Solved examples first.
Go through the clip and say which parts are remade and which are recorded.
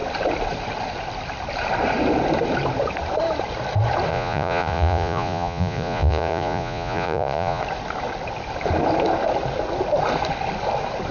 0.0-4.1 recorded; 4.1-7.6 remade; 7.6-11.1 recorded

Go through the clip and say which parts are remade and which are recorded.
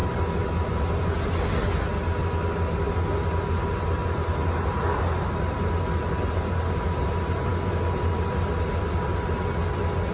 0.0-10.1 recorded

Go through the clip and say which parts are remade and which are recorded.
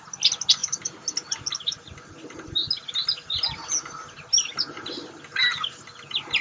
0.0-6.4 recorded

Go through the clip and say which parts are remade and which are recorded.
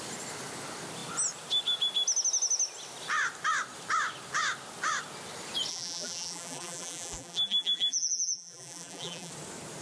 0.0-5.7 recorded; 5.7-9.3 remade; 9.3-9.8 recorded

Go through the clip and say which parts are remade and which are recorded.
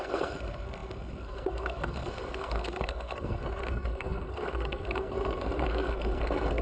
0.0-6.6 remade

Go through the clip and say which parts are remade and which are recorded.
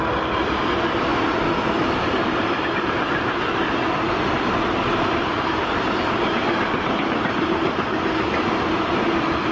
0.0-1.1 remade; 1.1-1.7 recorded; 1.7-9.5 remade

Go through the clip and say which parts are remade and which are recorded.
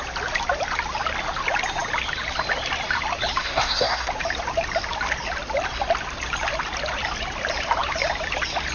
0.0-3.4 recorded; 3.4-4.1 remade; 4.1-8.7 recorded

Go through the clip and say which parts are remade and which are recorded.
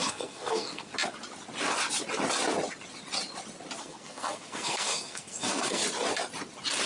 0.0-0.9 remade; 0.9-3.8 recorded; 3.8-5.8 remade; 5.8-6.9 recorded